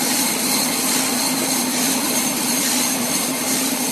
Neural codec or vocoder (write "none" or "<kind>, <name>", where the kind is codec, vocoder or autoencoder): vocoder, BigVGAN v2